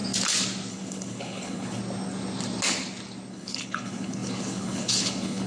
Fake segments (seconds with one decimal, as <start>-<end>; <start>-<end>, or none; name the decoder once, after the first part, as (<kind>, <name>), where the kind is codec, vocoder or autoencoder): 0.7-1.8 (codec, HILCodec); 3.3-5.5